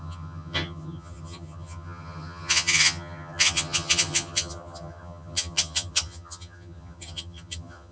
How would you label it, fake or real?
fake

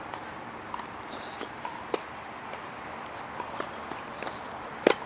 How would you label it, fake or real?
real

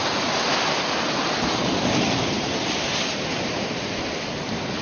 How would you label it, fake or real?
real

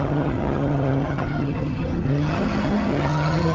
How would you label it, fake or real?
fake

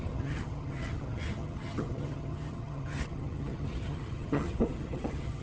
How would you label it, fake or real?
fake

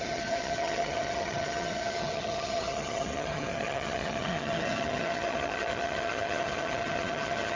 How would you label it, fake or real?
fake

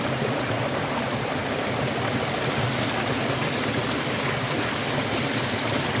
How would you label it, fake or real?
real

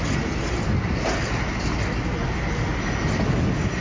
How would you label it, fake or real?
real